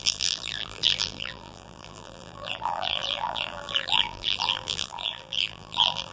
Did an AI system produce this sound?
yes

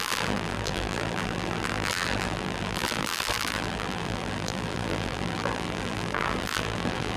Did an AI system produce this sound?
yes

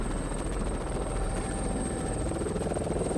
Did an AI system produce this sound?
yes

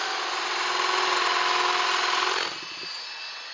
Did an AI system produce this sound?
no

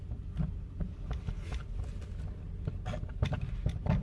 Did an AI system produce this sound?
no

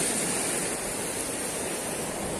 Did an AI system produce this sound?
no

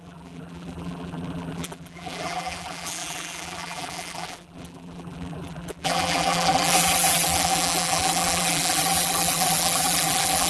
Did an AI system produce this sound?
yes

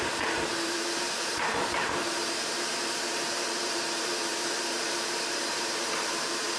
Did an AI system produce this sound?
yes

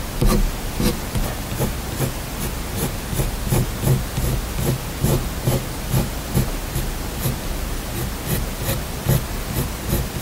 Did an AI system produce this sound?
no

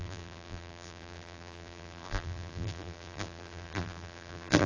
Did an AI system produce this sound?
yes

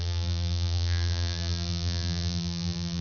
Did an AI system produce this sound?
yes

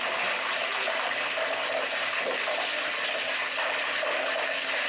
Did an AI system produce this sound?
no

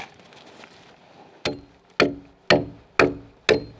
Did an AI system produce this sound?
no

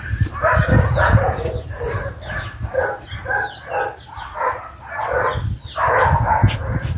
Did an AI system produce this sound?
no